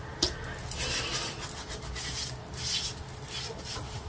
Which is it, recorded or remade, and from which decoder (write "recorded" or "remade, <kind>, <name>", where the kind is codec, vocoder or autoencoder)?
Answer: recorded